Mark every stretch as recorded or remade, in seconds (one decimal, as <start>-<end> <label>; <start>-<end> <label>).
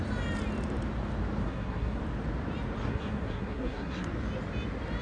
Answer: 0.0-1.4 recorded; 1.4-2.0 remade; 2.0-2.8 recorded; 2.8-4.1 remade; 4.1-5.0 recorded